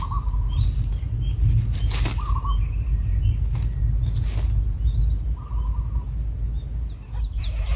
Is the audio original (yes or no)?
yes